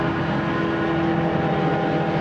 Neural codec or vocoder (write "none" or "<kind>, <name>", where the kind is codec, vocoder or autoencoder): none